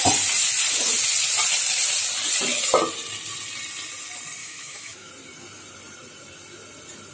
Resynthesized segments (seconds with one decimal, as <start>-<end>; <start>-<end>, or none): 4.4-5.1